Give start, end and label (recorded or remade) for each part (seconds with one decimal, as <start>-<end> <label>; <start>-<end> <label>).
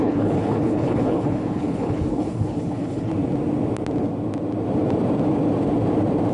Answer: 0.0-3.1 remade; 3.1-6.3 recorded